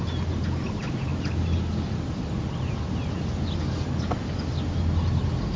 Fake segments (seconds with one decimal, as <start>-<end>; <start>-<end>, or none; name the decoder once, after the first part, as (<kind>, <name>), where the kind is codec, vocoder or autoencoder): none